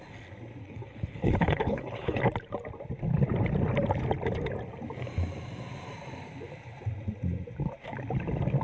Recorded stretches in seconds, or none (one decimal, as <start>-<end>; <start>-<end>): 0.0-0.6; 2.2-8.6